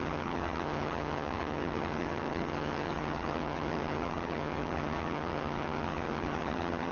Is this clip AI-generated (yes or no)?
yes